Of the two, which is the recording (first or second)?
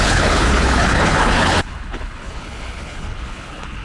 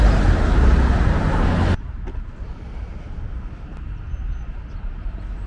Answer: second